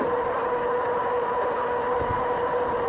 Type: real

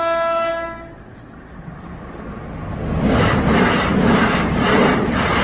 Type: real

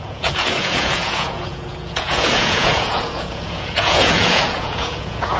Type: fake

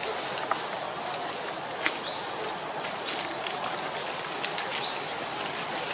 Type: real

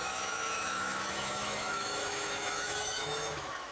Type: fake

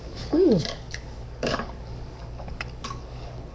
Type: fake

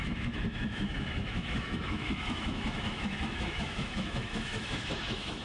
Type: fake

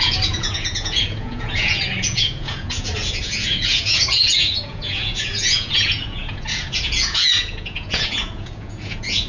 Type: fake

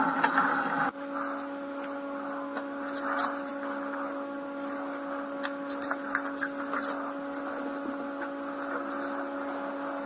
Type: real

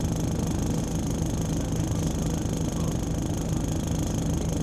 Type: real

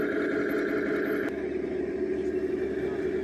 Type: real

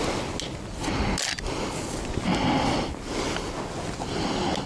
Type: real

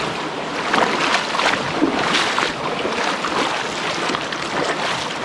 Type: real